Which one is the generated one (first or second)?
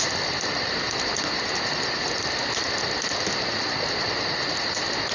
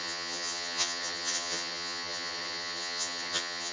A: second